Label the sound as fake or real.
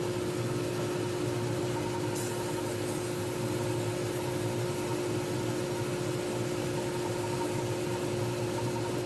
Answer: real